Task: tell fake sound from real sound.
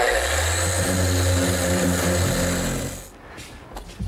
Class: real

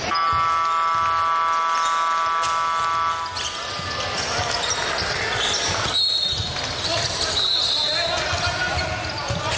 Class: real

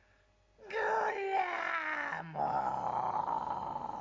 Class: real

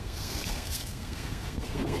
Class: fake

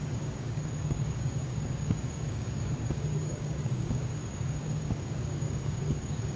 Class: fake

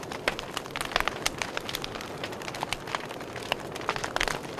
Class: real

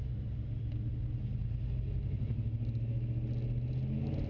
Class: real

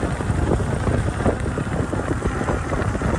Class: real